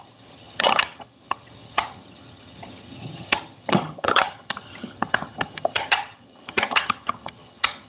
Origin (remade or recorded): remade